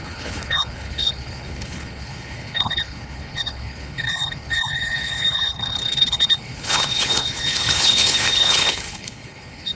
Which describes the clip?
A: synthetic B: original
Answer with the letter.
A